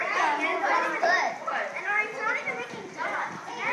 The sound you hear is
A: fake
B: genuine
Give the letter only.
B